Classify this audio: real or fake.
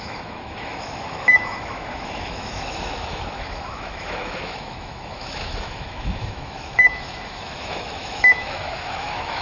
fake